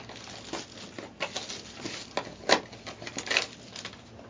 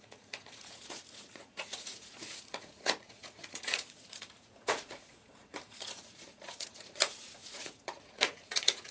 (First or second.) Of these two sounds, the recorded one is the first